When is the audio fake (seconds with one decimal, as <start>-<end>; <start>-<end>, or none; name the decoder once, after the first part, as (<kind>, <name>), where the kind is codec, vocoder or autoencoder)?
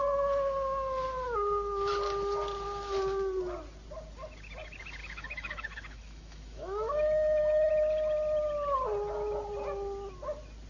5.0-7.7 (autoencoder, DAC-VAE)